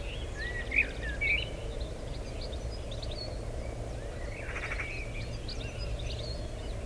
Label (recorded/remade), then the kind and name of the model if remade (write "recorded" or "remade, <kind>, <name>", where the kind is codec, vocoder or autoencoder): recorded